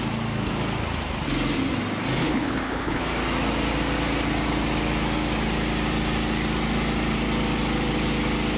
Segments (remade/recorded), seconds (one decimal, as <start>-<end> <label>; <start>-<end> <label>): 0.0-2.2 recorded; 2.2-3.0 remade; 3.0-8.6 recorded